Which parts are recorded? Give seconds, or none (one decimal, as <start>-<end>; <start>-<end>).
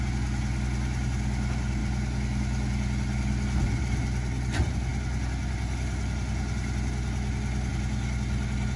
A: 0.0-8.8